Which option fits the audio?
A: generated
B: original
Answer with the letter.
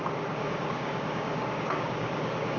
A